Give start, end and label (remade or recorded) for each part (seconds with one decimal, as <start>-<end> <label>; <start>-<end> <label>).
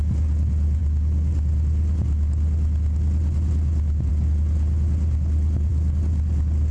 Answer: 0.0-6.7 recorded